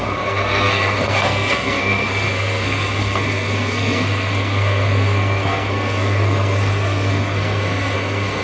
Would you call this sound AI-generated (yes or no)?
yes